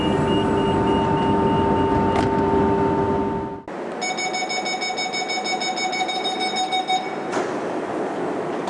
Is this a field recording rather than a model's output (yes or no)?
yes